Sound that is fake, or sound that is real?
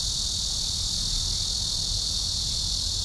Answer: real